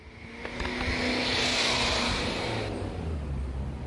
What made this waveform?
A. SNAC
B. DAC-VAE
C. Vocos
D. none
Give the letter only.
D